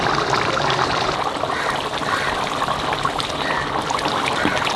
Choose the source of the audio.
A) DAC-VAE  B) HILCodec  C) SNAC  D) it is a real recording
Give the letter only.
D